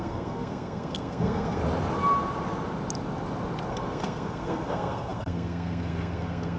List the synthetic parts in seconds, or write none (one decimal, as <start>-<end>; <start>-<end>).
0.0-1.6; 3.7-6.6